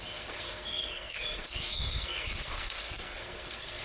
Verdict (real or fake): fake